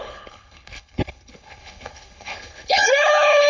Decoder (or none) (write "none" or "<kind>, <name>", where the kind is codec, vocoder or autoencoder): codec, HILCodec